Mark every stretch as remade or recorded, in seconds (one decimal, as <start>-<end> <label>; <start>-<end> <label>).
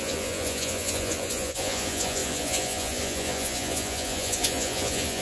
0.0-5.2 remade